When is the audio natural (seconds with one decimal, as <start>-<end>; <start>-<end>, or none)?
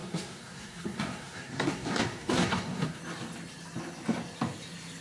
3.0-5.0